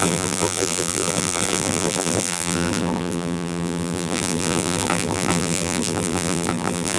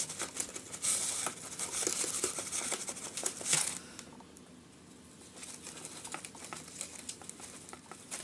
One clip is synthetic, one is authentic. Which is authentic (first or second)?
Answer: second